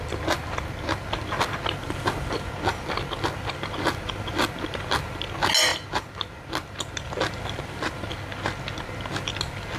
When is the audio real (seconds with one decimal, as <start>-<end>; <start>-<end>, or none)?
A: 0.0-9.8